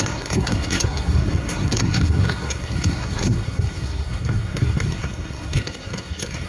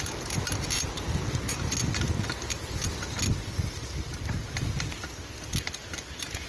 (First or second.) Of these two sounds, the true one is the second